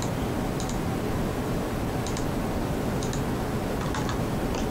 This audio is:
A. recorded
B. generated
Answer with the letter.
A